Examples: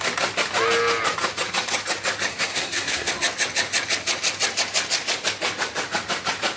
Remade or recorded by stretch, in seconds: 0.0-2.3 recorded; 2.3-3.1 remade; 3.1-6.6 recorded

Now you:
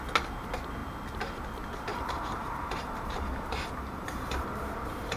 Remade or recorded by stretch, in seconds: 0.0-1.9 recorded; 1.9-5.2 remade